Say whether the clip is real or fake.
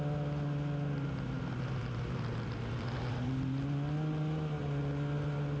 real